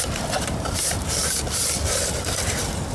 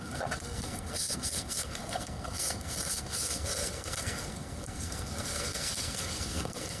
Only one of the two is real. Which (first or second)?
first